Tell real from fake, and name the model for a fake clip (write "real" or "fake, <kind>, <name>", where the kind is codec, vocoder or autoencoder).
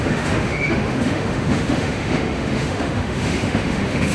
fake, autoencoder, DAC-VAE